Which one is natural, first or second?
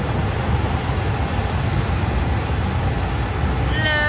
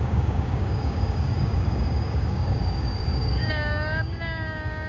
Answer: first